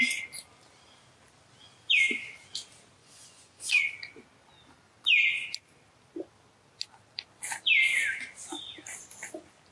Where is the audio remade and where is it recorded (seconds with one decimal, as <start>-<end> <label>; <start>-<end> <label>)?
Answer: 0.0-3.0 recorded; 3.0-3.9 remade; 3.9-9.7 recorded